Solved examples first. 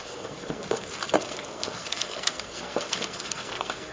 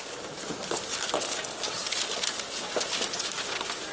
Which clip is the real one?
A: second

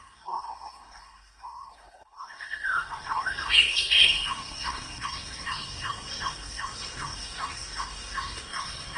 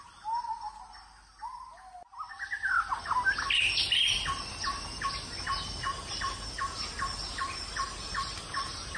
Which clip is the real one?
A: second